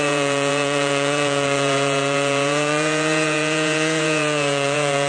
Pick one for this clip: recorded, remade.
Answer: remade